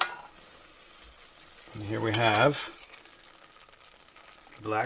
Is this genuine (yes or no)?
yes